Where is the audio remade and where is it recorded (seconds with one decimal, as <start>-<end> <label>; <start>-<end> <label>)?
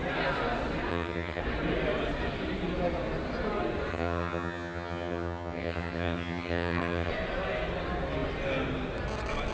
0.0-0.9 recorded; 0.9-1.4 remade; 1.4-3.9 recorded; 3.9-7.1 remade; 7.1-9.5 recorded